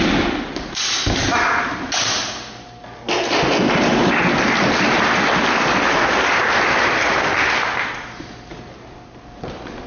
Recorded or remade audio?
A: recorded